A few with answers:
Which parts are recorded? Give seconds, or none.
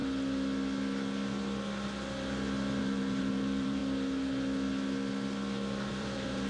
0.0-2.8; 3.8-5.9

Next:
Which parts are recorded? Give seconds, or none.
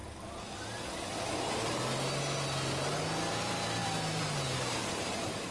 0.0-3.3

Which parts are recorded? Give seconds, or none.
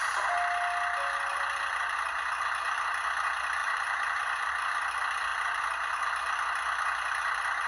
0.0-3.6; 4.5-7.7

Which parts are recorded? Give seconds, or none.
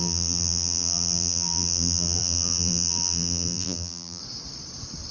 4.2-5.1